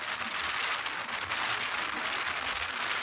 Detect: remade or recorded recorded